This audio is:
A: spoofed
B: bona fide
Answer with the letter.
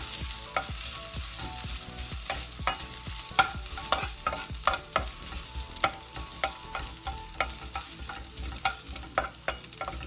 B